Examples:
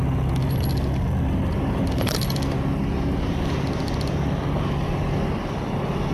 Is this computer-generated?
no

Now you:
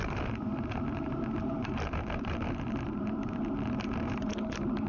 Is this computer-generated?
yes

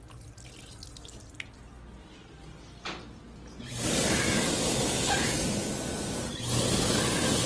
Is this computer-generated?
no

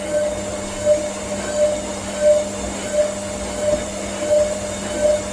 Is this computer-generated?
no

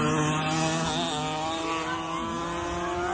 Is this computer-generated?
no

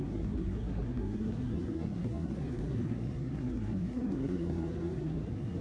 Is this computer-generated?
yes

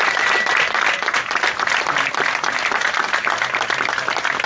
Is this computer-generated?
no